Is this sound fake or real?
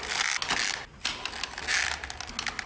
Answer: real